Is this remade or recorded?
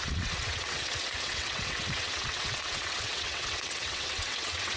remade